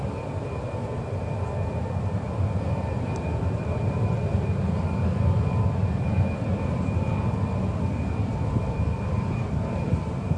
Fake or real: fake